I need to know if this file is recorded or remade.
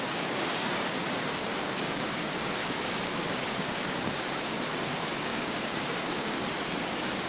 remade